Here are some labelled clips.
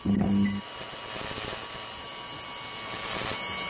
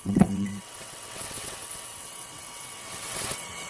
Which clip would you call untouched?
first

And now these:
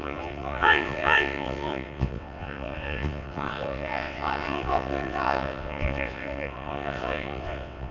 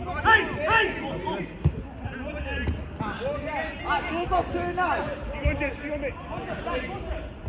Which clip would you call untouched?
second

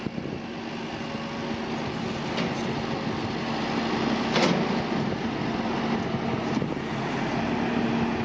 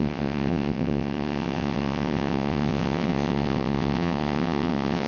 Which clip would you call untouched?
first